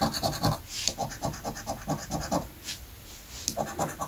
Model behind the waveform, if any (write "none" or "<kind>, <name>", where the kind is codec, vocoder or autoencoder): none